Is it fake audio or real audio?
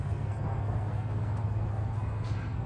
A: fake